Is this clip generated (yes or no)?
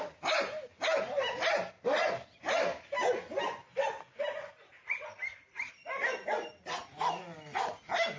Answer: no